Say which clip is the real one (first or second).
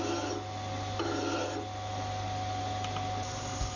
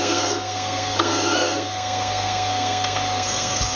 first